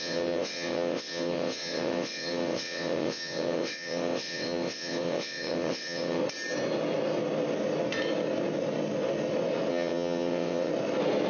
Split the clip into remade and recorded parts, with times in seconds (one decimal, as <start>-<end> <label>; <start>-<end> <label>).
0.0-6.2 remade; 6.2-9.7 recorded; 9.7-10.7 remade; 10.7-11.3 recorded